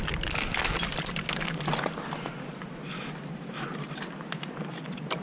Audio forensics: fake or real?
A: real